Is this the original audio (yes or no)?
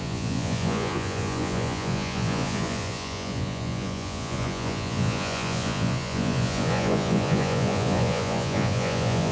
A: no